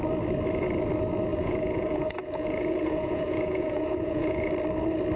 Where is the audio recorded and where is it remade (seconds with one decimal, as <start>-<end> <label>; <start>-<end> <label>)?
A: 0.0-1.3 recorded; 1.3-4.4 remade; 4.4-5.2 recorded